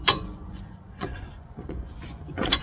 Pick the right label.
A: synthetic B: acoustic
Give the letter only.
A